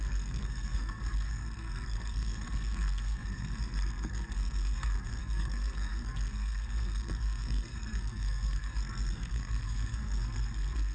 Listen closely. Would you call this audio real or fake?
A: fake